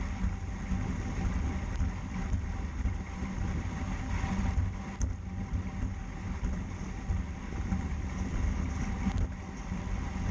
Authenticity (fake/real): real